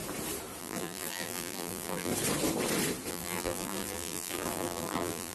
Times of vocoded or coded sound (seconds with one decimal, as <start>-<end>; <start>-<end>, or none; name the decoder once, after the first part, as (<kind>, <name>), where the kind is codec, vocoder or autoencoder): 0.6-2.1 (vocoder, BigVGAN v2); 3.1-5.3